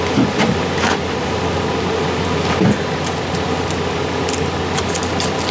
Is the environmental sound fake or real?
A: real